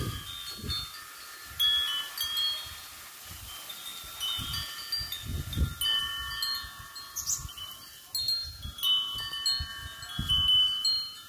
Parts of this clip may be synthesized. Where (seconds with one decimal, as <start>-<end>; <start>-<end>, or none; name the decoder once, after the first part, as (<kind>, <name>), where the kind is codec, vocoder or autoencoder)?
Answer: none